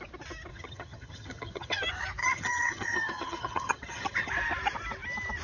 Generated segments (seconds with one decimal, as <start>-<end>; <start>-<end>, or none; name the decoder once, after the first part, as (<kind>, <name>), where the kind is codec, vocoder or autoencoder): 0.5-1.8 (vocoder, HiFi-GAN); 2.2-4.3